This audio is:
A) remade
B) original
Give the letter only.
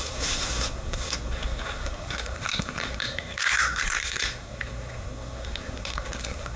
A